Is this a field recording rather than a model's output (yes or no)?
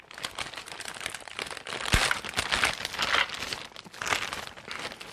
yes